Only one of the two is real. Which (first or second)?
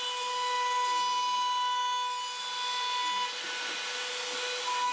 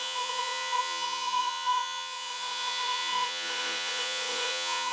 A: first